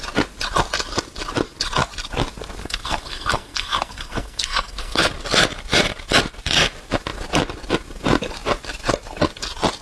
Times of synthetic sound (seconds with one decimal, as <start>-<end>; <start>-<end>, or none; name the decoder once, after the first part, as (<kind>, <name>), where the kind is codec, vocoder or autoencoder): 2.6-5.1 (codec, SNAC)